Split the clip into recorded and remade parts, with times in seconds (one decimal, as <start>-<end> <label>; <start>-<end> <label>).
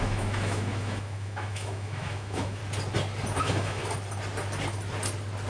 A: 0.0-2.6 remade; 2.6-3.4 recorded; 3.4-3.8 remade; 3.8-5.5 recorded